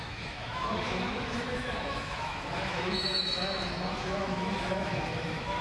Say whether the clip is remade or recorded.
remade